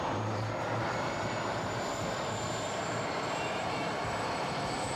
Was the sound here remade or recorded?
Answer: remade